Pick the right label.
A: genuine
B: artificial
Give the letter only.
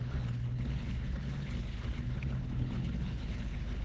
B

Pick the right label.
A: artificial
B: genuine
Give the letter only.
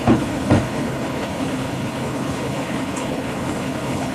A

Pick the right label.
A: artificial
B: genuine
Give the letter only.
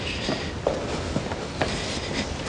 B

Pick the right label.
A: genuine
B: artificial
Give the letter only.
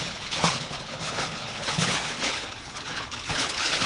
B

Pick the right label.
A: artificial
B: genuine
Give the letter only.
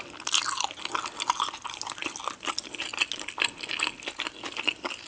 B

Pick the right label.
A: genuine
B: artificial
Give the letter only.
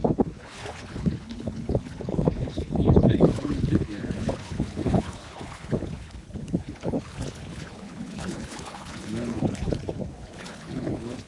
B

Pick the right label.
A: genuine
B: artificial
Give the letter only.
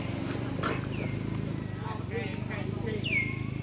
A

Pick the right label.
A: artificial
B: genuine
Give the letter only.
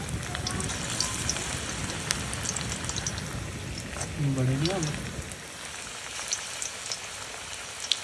B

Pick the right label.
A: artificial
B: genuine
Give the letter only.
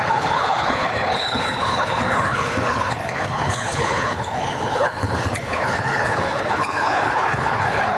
A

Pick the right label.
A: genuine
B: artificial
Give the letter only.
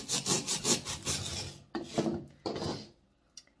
A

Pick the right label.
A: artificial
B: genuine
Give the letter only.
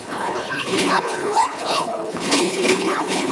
A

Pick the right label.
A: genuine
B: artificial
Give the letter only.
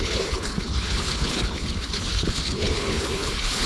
B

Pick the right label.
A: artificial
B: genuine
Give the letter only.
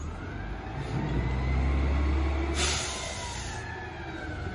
B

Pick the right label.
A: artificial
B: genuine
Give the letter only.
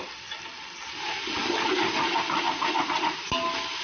B